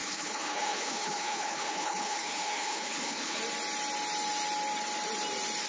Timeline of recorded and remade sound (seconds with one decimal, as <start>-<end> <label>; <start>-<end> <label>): 0.0-3.4 remade; 3.4-5.7 recorded